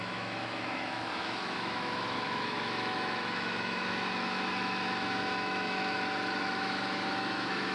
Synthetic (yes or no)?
yes